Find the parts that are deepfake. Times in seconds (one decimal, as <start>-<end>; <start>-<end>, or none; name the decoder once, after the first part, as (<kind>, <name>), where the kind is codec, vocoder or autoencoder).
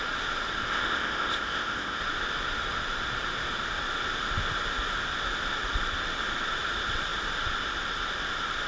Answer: 0.7-2.0 (codec, ZipCodec)